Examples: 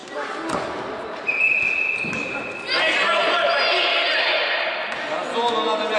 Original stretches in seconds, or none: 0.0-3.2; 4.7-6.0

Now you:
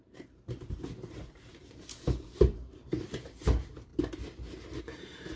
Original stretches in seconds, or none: 3.9-4.8

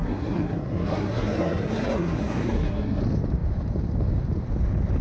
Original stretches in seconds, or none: 3.0-5.0